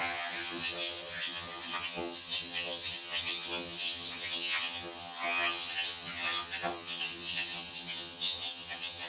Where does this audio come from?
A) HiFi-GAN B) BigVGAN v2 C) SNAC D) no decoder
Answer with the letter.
A